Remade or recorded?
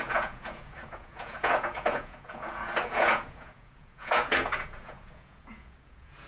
remade